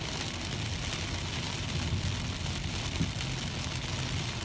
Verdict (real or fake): real